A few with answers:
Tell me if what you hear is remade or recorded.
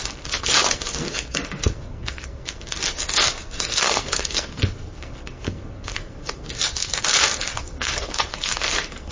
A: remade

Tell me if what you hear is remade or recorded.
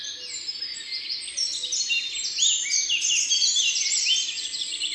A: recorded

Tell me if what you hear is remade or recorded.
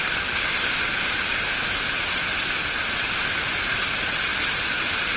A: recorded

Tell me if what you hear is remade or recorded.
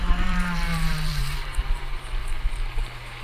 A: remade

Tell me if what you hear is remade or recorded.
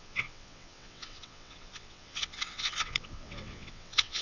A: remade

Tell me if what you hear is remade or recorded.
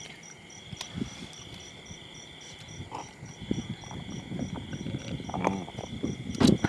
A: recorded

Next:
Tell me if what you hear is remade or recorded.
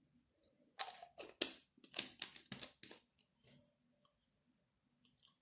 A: recorded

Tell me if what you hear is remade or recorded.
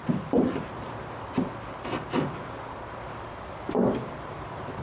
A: remade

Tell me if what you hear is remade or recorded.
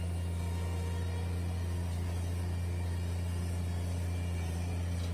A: recorded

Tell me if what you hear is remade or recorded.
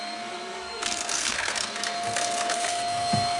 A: remade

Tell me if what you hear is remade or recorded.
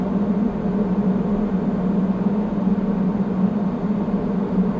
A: recorded